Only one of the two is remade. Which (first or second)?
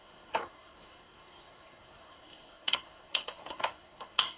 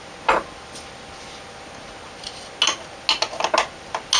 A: first